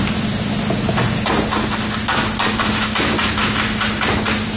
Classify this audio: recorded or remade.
recorded